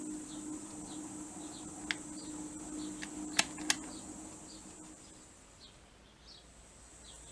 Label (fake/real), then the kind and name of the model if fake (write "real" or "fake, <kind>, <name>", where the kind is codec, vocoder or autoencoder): real